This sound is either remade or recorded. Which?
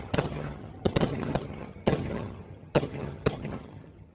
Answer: remade